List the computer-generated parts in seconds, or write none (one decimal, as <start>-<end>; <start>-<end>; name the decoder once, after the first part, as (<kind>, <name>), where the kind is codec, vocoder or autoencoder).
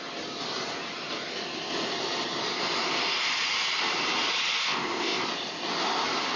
4.6-5.2 (codec, ZipCodec)